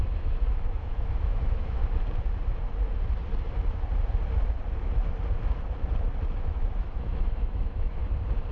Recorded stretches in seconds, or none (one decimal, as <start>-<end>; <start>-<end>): 1.8-6.4; 8.0-8.5